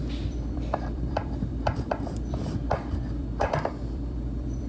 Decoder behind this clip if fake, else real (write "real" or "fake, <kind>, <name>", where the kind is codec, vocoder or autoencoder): fake, vocoder, BigVGAN v2